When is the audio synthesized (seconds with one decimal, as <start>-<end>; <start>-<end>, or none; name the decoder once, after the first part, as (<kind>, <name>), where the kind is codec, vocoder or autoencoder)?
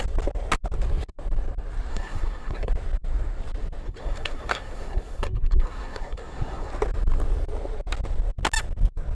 1.9-2.7 (codec, SNAC); 3.8-6.7